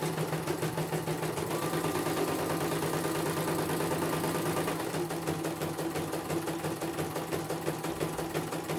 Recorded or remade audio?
recorded